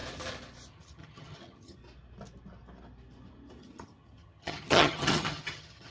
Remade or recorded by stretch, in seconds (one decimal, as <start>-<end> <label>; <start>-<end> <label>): 0.0-0.7 recorded; 0.7-1.8 remade; 1.8-3.6 recorded; 3.6-5.9 remade